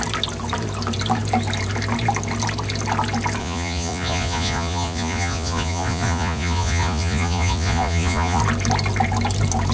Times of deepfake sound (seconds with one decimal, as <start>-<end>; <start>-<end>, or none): 3.4-8.4